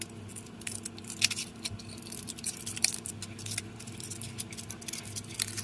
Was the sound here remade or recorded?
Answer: recorded